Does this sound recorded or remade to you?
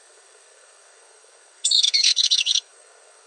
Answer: remade